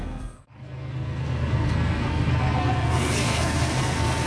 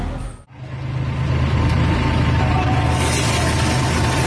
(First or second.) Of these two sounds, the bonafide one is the second